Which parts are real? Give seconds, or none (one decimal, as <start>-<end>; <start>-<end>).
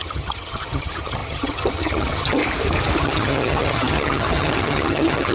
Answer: 2.4-3.0